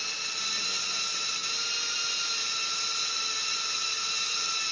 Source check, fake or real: real